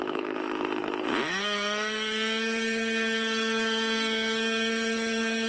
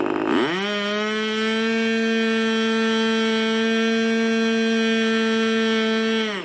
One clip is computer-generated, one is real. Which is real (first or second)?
second